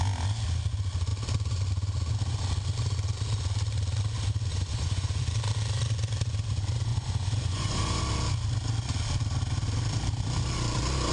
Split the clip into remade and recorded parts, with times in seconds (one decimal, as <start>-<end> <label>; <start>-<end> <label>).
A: 0.0-4.5 recorded; 4.5-5.3 remade; 5.3-6.9 recorded; 6.9-8.0 remade; 8.0-11.1 recorded